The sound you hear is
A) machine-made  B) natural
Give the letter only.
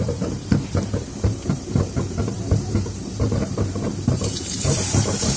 A